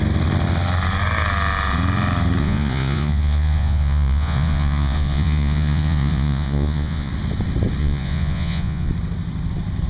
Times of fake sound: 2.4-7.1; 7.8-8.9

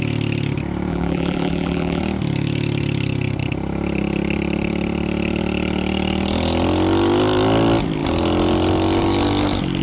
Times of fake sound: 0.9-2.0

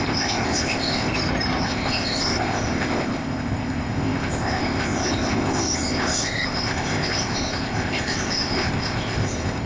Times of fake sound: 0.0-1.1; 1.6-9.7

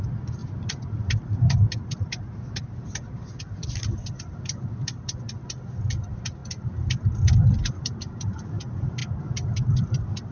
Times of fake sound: 0.4-2.6